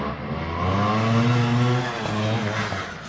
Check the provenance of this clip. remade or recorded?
recorded